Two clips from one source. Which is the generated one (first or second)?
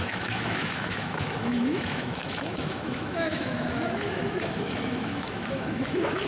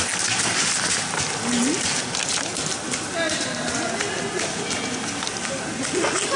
first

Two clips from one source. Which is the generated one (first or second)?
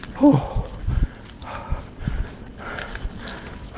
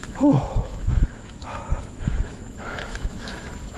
second